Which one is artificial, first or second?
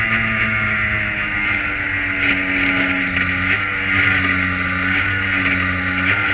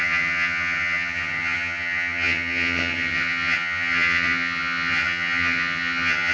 second